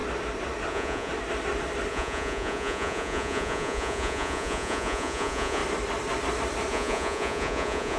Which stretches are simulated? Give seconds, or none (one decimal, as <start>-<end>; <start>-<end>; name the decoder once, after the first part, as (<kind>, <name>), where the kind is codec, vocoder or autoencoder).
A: 0.7-1.1 (vocoder, Vocos); 1.9-5.6; 6.7-8.0